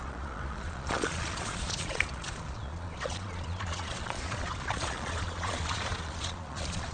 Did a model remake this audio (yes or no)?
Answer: yes